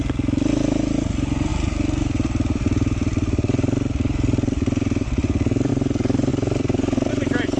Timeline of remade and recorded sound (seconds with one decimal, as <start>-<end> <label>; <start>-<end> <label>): 0.0-1.5 recorded; 1.5-5.7 remade; 5.7-6.3 recorded; 6.3-7.1 remade; 7.1-7.6 recorded